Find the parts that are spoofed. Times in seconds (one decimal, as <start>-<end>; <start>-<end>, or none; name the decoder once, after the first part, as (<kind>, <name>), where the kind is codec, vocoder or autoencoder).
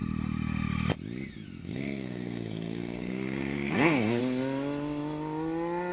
1.6-4.2 (codec, SNAC)